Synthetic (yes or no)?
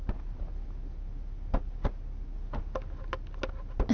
no